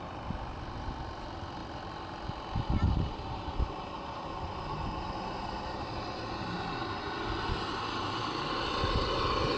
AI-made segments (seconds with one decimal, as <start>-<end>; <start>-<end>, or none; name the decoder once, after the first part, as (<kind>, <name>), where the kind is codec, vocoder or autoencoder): none